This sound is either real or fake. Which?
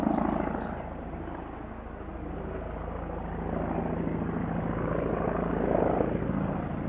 real